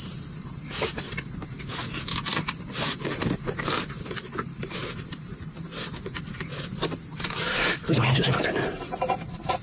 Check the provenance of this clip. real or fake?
fake